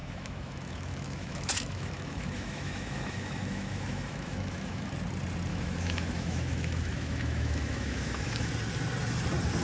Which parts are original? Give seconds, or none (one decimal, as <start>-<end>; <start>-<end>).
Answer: 4.9-5.5; 8.5-9.6